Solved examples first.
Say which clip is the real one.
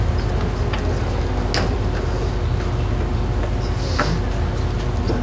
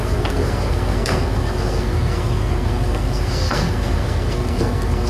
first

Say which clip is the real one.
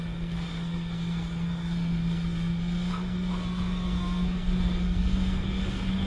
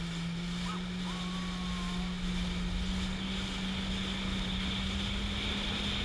second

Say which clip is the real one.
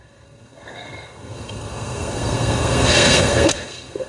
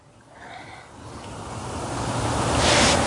second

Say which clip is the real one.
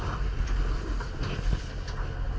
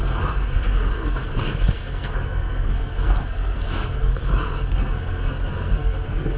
first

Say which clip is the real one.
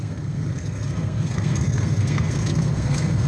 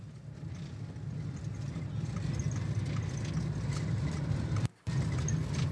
second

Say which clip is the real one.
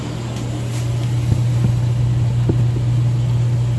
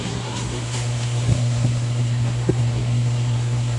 first